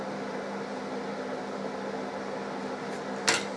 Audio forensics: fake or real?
real